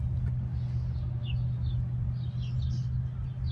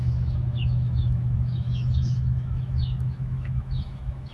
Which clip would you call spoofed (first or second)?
second